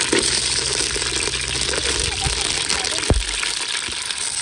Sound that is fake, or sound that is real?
real